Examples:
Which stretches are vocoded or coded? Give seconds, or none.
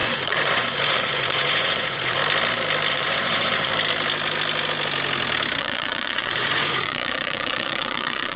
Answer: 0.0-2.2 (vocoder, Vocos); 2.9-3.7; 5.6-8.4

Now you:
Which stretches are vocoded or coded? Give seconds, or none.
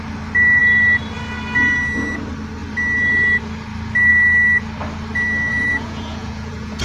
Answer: 5.5-6.8 (vocoder, Vocos)